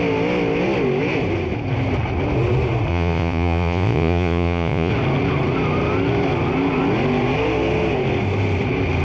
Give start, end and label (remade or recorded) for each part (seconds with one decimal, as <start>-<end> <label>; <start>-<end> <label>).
0.0-2.9 recorded; 2.9-4.9 remade; 4.9-9.0 recorded